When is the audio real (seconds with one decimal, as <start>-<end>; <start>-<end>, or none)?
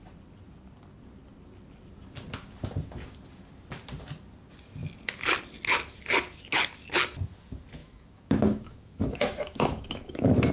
0.0-7.8